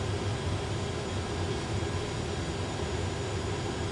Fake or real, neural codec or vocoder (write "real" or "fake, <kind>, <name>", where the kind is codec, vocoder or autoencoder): real